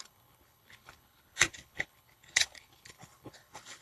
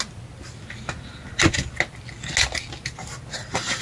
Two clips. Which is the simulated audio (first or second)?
first